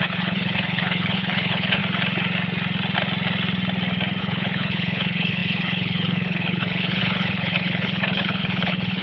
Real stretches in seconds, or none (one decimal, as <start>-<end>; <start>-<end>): 1.8-4.2